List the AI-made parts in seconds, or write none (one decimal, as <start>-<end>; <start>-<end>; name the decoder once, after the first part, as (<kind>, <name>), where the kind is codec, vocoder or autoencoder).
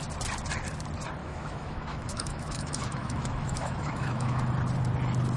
1.2-4.4 (autoencoder, DAC-VAE)